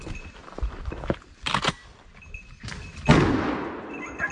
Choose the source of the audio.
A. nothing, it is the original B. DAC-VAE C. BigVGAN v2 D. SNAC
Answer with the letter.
A